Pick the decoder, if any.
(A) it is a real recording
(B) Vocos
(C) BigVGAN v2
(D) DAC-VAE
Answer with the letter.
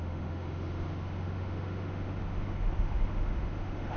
D